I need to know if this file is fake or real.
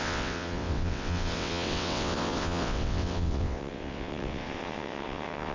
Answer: fake